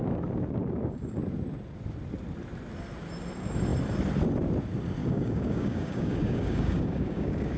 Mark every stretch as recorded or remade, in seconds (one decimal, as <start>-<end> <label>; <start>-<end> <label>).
0.0-0.6 recorded; 0.6-1.2 remade; 1.2-5.0 recorded; 5.0-7.6 remade